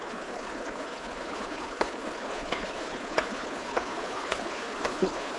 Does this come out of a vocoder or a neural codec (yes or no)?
yes